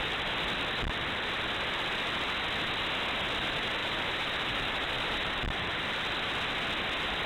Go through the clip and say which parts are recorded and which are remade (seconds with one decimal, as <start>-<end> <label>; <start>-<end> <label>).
0.0-3.8 recorded; 3.8-5.3 remade; 5.3-7.3 recorded